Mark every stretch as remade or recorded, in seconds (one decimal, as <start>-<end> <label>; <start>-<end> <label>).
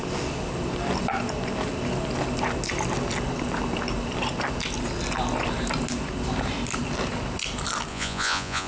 0.0-7.9 recorded; 7.9-8.7 remade